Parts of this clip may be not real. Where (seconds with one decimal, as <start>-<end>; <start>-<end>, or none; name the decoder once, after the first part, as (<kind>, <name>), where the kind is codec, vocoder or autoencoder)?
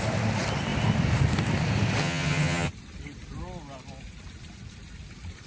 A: 2.0-2.7 (vocoder, HiFi-GAN)